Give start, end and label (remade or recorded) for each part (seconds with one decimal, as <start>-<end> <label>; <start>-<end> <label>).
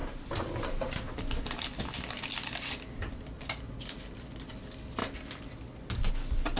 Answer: 0.0-6.6 recorded